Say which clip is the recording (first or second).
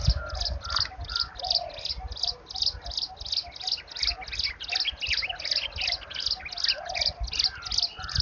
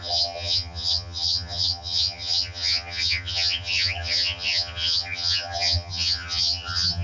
first